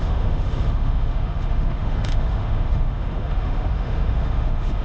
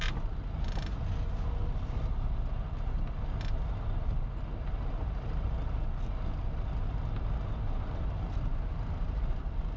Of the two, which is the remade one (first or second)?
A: first